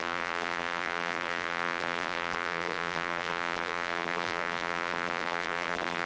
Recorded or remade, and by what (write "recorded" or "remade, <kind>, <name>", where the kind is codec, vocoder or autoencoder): remade, vocoder, BigVGAN v2